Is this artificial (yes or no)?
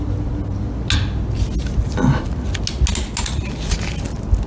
no